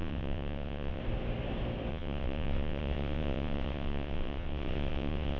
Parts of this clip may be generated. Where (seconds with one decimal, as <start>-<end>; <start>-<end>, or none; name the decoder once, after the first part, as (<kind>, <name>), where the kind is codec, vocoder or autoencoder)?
0.0-1.0 (vocoder, WaveNeXt); 1.9-5.4